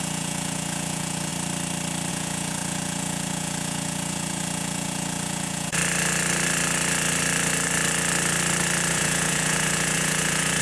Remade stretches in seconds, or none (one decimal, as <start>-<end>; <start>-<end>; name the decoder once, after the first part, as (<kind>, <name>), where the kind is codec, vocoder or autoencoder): 0.0-1.3 (vocoder, Vocos); 2.1-5.8; 8.9-10.6